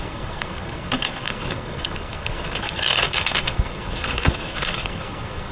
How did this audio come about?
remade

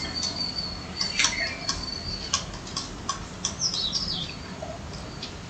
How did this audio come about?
recorded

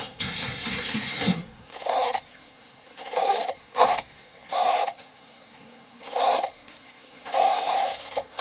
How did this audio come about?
remade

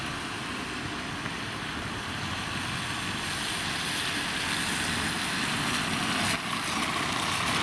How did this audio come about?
recorded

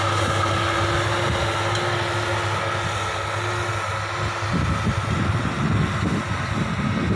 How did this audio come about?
recorded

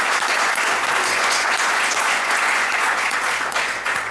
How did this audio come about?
remade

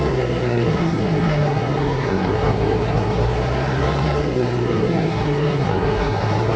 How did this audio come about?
remade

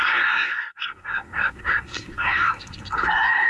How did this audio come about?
remade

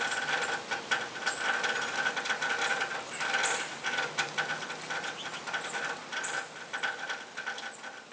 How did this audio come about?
recorded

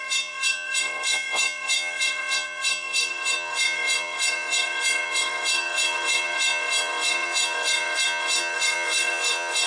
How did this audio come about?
remade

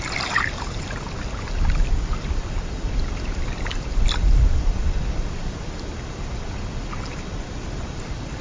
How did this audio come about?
recorded